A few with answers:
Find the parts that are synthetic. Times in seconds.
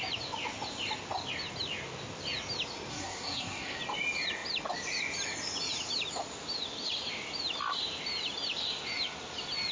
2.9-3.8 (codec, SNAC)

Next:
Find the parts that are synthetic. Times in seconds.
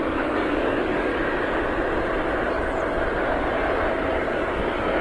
0.0-1.1 (codec, DAC); 4.1-5.0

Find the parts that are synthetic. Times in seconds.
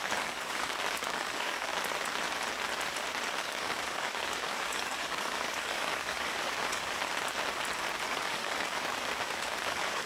0.0-1.7 (codec, DAC); 3.4-7.0; 8.1-10.1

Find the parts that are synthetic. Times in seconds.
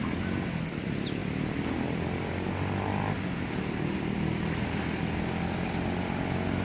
none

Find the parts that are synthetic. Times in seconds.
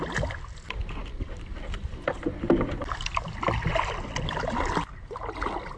none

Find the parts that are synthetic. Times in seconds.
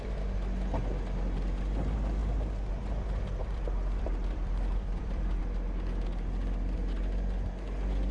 3.4-5.4 (vocoder, BigVGAN v2)